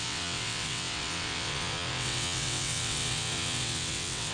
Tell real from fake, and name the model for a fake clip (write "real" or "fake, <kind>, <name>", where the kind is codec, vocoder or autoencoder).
fake, vocoder, WaveNeXt